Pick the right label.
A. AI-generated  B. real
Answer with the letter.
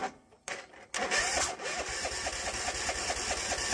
B